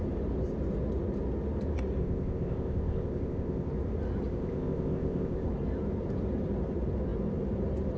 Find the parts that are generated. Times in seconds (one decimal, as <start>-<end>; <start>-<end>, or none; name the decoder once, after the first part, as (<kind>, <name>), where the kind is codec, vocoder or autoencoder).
2.0-3.7 (codec, ZipCodec); 4.3-5.5